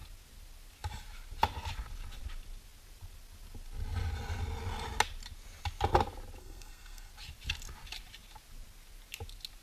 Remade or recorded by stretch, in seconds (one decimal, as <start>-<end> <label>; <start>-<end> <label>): 0.0-6.4 recorded; 6.4-7.1 remade; 7.1-9.6 recorded